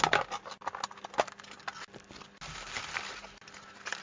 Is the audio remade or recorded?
recorded